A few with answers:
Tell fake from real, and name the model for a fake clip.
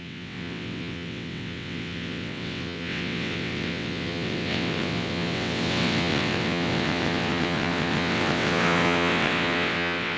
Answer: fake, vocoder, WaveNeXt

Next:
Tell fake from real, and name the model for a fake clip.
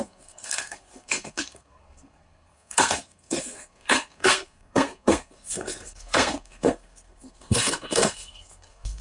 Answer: fake, codec, SNAC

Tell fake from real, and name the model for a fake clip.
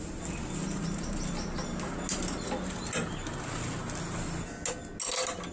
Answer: real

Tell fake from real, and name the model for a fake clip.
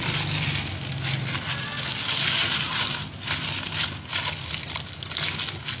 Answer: real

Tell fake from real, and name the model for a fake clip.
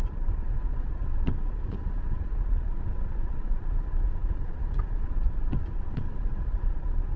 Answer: fake, vocoder, Vocos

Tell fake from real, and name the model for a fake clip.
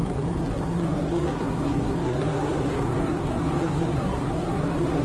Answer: fake, codec, SNAC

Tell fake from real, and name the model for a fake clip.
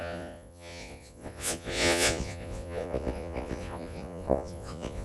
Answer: fake, vocoder, Vocos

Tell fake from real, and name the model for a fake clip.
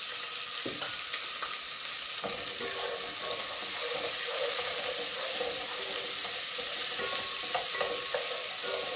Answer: real